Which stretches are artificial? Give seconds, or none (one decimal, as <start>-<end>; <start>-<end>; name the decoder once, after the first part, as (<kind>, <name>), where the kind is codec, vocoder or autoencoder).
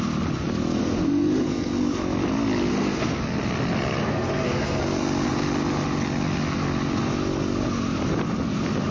0.8-1.8 (codec, SNAC); 2.7-3.2; 4.0-4.8